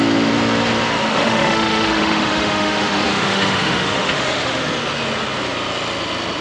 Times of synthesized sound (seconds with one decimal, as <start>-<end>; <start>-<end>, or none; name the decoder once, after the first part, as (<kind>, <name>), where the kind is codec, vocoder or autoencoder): 1.1-4.6 (autoencoder, DAC-VAE)